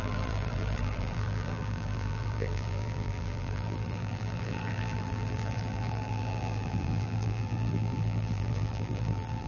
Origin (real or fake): fake